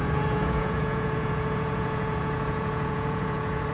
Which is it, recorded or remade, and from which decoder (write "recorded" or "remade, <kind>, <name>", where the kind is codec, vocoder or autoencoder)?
remade, vocoder, Vocos